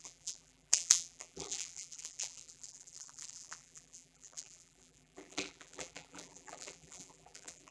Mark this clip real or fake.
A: fake